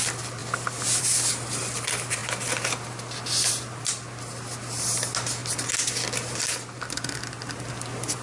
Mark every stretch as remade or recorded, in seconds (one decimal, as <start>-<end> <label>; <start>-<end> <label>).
0.0-8.2 recorded